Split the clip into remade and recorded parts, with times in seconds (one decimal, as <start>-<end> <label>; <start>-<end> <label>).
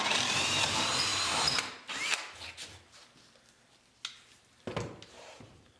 0.0-5.8 recorded